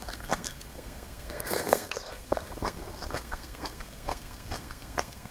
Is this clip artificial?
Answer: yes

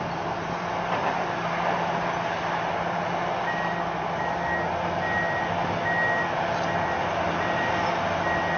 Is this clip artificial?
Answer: no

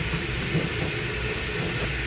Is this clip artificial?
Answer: no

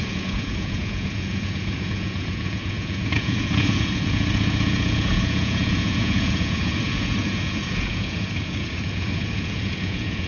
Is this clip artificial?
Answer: yes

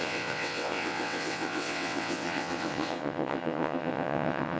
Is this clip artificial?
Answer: yes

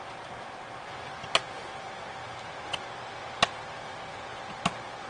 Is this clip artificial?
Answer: no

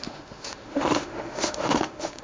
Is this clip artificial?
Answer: yes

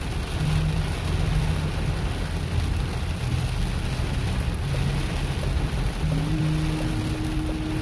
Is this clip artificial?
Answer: no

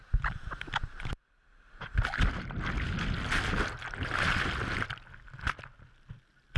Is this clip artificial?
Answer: no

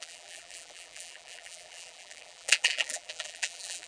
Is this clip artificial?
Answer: yes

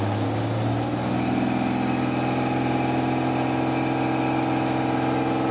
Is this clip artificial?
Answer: no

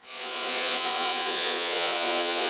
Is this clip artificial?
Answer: yes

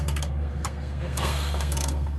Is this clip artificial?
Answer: yes